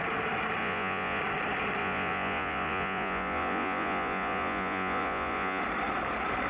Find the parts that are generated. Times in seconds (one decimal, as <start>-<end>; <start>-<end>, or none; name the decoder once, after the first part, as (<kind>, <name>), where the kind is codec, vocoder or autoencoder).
0.6-1.2 (vocoder, Vocos); 1.8-5.6